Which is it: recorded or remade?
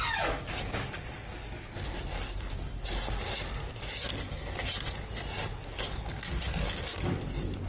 recorded